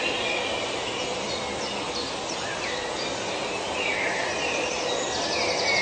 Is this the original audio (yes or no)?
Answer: yes